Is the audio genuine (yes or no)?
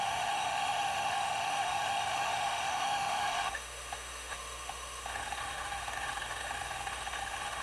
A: no